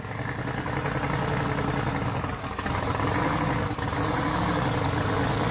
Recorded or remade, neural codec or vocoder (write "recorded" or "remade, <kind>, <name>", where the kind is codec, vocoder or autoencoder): recorded